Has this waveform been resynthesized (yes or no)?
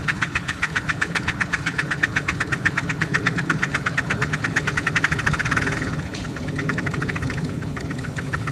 yes